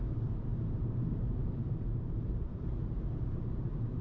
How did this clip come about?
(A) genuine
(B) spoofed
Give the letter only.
B